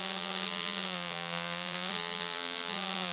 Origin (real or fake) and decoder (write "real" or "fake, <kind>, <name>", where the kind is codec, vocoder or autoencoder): fake, vocoder, BigVGAN v2